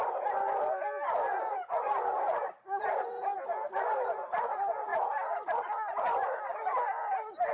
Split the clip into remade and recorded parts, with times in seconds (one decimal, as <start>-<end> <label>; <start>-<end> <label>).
0.0-7.5 recorded